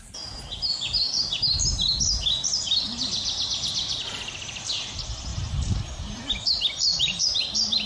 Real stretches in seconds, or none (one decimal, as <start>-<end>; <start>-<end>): 0.0-5.3; 6.2-6.9; 7.4-7.9